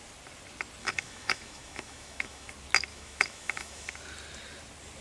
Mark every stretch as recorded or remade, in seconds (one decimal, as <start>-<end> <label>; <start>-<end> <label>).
0.0-0.8 recorded; 0.8-2.5 remade; 2.5-2.9 recorded; 2.9-3.9 remade; 3.9-5.0 recorded